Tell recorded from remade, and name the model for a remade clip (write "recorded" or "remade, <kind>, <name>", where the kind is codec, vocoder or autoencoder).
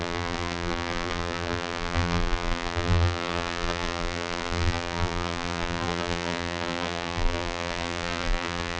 remade, vocoder, BigVGAN v2